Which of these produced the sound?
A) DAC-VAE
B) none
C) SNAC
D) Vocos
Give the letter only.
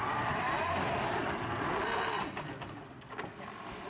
B